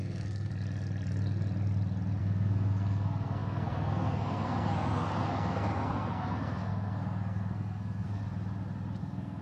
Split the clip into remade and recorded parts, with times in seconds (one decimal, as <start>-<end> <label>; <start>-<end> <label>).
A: 0.0-0.5 remade; 0.5-2.2 recorded; 2.2-8.2 remade; 8.2-9.0 recorded; 9.0-9.4 remade